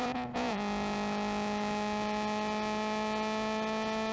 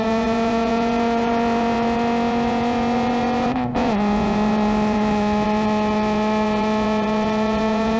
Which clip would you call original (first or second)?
first